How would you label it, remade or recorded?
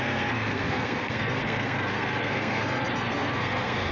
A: remade